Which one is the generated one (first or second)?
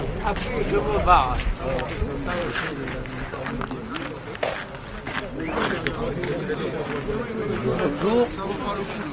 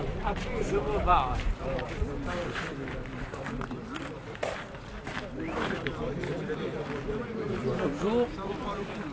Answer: second